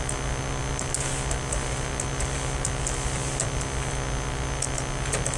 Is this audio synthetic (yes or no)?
no